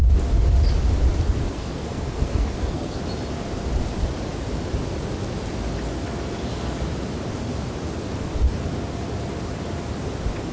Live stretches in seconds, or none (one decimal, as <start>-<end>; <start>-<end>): 0.0-1.4; 3.0-10.5